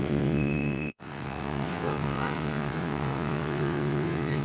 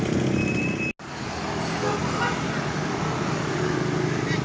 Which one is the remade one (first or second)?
first